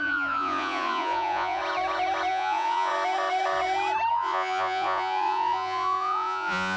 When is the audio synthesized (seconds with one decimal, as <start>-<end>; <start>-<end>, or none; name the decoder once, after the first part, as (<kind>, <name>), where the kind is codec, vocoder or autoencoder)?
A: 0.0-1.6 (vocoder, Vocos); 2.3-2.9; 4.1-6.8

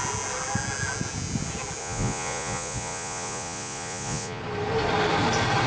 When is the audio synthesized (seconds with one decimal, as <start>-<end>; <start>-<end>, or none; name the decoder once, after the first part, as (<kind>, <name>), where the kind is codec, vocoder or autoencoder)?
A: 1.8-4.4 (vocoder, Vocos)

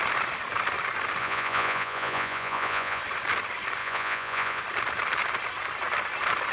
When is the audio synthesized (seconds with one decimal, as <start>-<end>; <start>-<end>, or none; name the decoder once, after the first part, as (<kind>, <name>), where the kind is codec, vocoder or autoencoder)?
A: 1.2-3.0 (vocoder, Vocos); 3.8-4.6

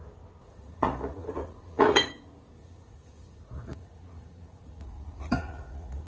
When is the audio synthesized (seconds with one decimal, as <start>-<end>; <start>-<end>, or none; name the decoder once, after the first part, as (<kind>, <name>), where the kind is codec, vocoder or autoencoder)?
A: 0.4-2.1 (vocoder, Vocos); 2.6-6.1

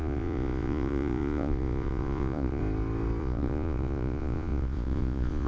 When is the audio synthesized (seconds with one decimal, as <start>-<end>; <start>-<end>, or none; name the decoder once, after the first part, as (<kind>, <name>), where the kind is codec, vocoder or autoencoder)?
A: 0.0-2.6 (vocoder, Vocos); 3.2-5.5